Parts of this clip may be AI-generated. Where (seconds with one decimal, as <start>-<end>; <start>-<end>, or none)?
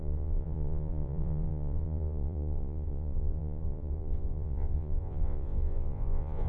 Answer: 0.0-6.5